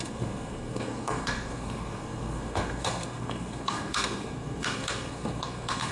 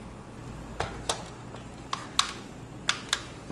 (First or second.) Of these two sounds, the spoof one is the first